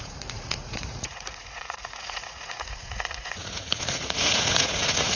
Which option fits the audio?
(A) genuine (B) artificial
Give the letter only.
B